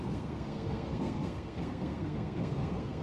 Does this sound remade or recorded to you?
remade